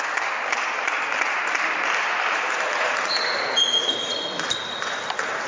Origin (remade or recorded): recorded